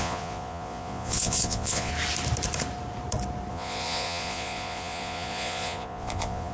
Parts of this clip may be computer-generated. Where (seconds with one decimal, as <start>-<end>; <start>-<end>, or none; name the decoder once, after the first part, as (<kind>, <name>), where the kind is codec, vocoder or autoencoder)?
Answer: 0.0-1.9 (vocoder, Vocos); 3.5-6.5